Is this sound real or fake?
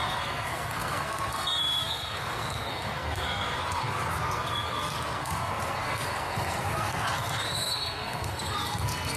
fake